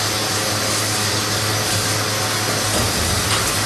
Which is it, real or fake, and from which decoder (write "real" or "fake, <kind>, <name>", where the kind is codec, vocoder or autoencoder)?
real